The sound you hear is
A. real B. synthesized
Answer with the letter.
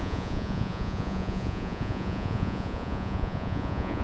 B